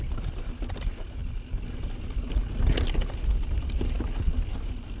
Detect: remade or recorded recorded